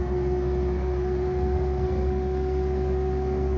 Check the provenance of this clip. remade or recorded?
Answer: remade